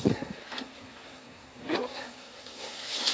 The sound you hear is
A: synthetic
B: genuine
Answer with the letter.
A